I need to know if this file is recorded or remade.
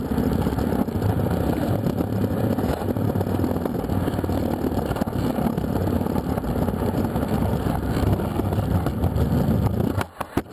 recorded